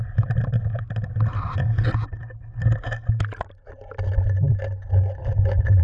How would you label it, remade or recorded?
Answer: recorded